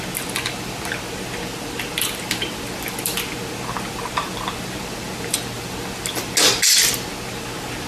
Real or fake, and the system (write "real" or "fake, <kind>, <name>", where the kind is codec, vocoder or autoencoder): real